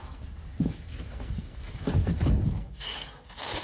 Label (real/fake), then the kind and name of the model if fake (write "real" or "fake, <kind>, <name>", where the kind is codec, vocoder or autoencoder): fake, codec, SNAC